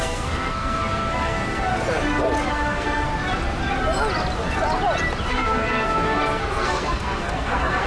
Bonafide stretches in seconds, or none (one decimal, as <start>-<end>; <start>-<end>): 1.7-2.5; 3.1-5.3